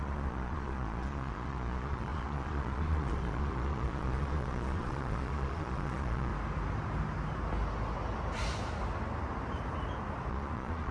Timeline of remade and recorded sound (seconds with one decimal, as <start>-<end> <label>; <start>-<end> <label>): 0.0-6.3 remade; 6.3-10.3 recorded; 10.3-10.9 remade